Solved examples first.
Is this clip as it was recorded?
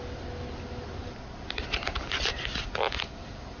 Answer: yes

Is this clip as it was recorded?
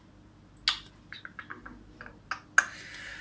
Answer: yes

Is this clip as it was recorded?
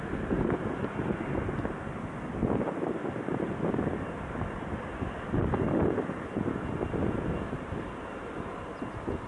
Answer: yes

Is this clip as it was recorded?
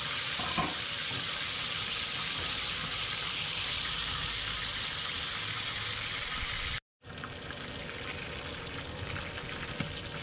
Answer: yes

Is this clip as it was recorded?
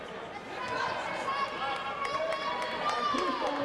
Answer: yes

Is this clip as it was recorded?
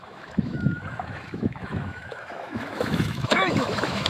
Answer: no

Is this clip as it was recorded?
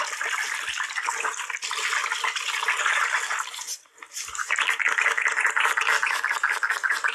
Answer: yes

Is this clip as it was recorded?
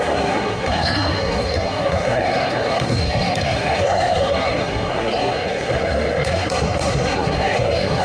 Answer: no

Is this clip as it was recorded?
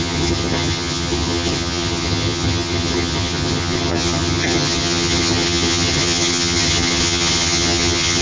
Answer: no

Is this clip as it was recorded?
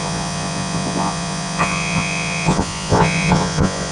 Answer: no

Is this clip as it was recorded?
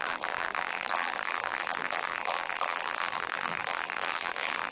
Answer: no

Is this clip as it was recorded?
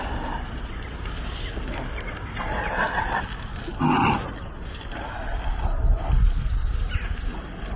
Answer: yes